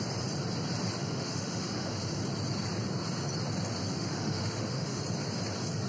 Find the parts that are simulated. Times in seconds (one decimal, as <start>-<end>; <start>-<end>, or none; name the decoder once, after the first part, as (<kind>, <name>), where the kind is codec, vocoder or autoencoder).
1.0-2.2 (autoencoder, DAC-VAE); 3.9-5.0